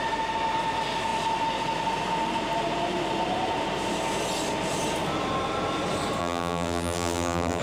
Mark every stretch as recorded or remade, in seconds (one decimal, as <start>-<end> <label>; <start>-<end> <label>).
0.0-6.2 recorded; 6.2-7.6 remade

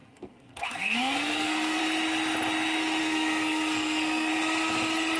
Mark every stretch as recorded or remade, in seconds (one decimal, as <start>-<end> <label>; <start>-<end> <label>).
0.0-1.8 remade; 1.8-3.0 recorded; 3.0-4.3 remade; 4.3-5.2 recorded

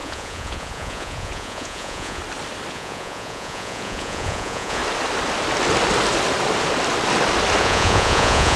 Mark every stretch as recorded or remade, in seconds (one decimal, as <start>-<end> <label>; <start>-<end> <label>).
0.0-2.2 remade; 2.2-2.7 recorded; 2.7-4.8 remade; 4.8-7.6 recorded; 7.6-8.6 remade

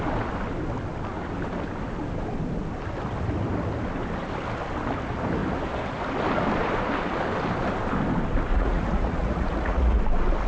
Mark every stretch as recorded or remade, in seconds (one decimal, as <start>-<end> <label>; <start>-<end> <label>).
0.0-8.5 recorded; 8.5-10.0 remade; 10.0-10.5 recorded

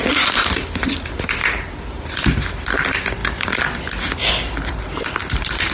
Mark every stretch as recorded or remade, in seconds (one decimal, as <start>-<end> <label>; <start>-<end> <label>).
0.0-5.7 recorded

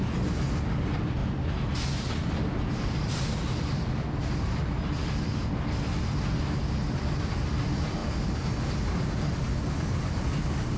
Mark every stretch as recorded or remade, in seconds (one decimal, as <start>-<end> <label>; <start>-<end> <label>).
0.0-10.8 recorded

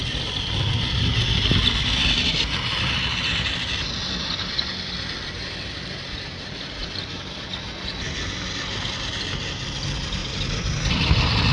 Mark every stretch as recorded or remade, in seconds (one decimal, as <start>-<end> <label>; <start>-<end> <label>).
0.0-11.5 remade

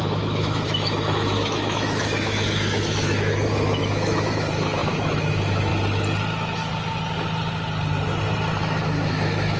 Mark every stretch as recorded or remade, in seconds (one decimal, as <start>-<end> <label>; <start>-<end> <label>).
0.0-5.7 remade; 5.7-8.6 recorded; 8.6-9.6 remade